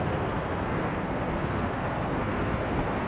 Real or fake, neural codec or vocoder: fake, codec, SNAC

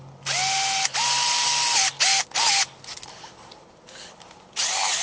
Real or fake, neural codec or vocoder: real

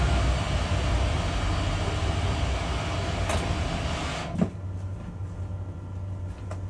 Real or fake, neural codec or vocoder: real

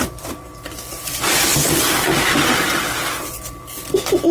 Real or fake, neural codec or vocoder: real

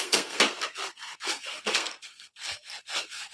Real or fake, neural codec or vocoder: fake, codec, SNAC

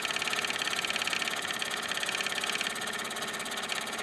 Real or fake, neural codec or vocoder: real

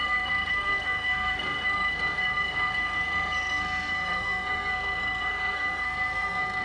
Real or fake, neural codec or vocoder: fake, codec, SNAC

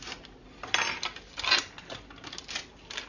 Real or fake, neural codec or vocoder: real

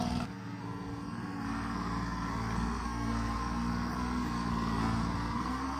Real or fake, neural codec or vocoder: fake, codec, SNAC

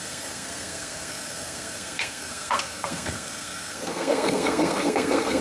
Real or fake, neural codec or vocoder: fake, codec, SNAC